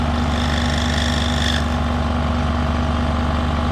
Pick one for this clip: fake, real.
real